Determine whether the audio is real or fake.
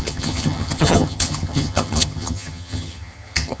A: fake